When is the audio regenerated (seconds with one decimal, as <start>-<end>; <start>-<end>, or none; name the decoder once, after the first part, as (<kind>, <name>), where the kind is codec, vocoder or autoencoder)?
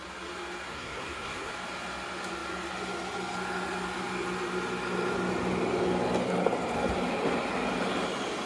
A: 0.7-1.5 (codec, SNAC)